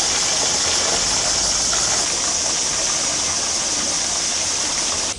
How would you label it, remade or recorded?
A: recorded